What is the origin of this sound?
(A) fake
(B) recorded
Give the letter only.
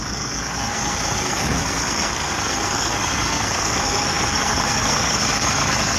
A